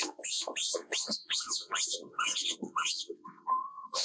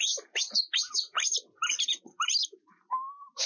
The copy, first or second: first